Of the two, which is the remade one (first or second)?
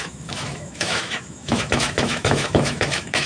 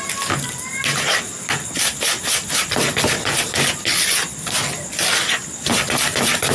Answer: first